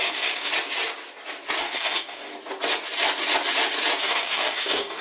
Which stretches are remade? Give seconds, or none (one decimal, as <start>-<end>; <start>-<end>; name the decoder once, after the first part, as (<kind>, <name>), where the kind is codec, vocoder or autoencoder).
0.0-0.5 (codec, DAC); 1.6-2.3; 4.0-5.0